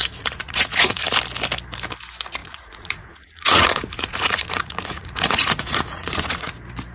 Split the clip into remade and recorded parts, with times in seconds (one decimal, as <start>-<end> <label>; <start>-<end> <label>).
0.0-1.1 remade; 1.1-2.4 recorded; 2.4-6.5 remade; 6.5-6.9 recorded